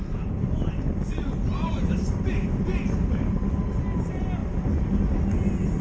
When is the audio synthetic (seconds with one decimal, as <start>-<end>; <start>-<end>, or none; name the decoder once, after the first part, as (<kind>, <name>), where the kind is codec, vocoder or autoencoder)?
none